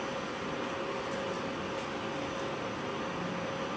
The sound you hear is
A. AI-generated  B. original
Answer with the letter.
B